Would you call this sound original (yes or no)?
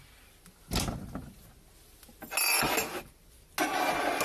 yes